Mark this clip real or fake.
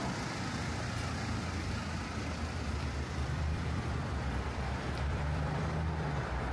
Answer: fake